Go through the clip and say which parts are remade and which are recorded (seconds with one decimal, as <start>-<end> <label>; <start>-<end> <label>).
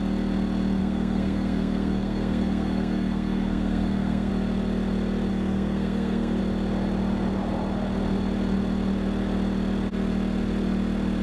0.0-0.8 recorded; 0.8-4.3 remade; 4.3-5.3 recorded; 5.3-6.4 remade; 6.4-11.2 recorded